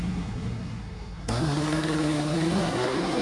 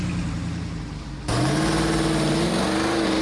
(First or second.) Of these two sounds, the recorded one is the second